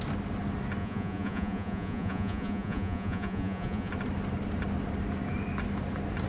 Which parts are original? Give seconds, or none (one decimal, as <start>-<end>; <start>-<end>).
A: 0.0-0.8; 3.9-6.3